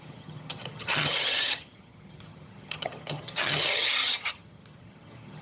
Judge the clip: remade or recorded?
remade